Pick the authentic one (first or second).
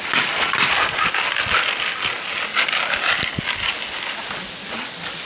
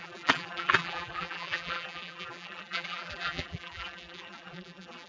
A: first